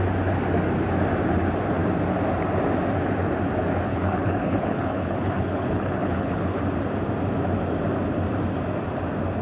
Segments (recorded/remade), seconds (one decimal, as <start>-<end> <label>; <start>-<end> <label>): 0.0-3.9 recorded; 3.9-6.6 remade; 6.6-9.4 recorded